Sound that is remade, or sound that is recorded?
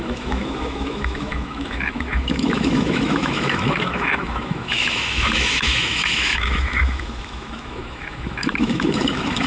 remade